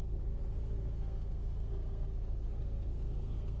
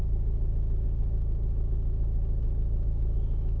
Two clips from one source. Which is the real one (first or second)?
second